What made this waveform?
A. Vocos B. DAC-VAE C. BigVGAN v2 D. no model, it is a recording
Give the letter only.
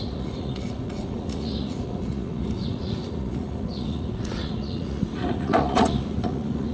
A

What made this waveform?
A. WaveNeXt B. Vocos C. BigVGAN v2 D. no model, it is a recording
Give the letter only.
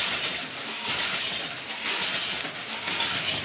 D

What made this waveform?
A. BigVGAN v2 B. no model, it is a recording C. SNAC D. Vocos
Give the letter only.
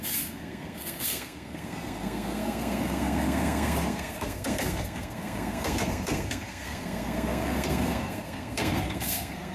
C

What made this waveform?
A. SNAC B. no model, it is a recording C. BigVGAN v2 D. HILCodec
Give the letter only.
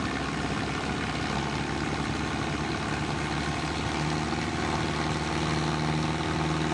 B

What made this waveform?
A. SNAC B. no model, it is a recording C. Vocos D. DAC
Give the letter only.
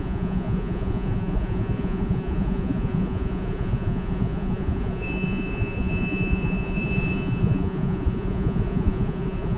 C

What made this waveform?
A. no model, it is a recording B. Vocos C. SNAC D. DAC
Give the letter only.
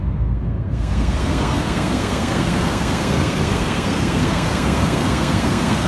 C